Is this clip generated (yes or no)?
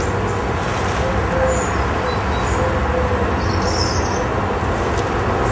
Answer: no